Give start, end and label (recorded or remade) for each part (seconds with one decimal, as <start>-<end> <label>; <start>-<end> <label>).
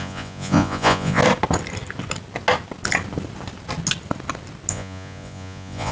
0.0-1.2 remade; 1.2-4.7 recorded; 4.7-5.9 remade